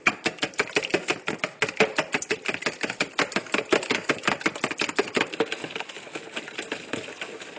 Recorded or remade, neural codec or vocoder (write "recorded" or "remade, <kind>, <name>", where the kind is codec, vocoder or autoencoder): recorded